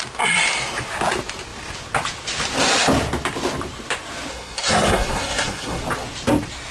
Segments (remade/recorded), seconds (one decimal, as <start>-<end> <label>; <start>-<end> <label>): 0.0-4.3 recorded; 4.3-5.8 remade; 5.8-6.7 recorded